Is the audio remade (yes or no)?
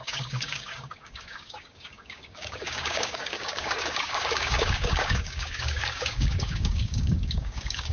yes